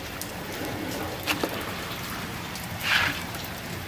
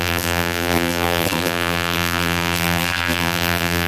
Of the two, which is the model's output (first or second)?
second